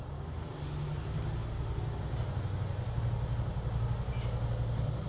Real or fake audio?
real